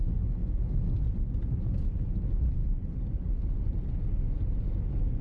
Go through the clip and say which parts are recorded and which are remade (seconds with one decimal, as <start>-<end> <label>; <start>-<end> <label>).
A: 0.0-0.4 recorded; 0.4-1.0 remade; 1.0-2.6 recorded; 2.6-3.8 remade; 3.8-5.2 recorded